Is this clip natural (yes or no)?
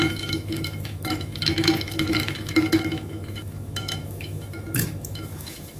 no